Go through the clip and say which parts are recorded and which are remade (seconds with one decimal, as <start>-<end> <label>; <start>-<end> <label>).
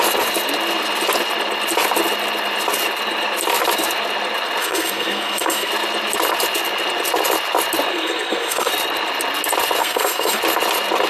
0.0-4.6 recorded; 4.6-5.7 remade; 5.7-7.9 recorded; 7.9-8.7 remade; 8.7-9.8 recorded; 9.8-10.4 remade; 10.4-11.1 recorded